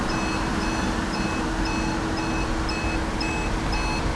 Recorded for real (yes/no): yes